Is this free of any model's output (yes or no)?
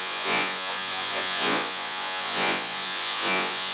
no